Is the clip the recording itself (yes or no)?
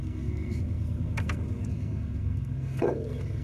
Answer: no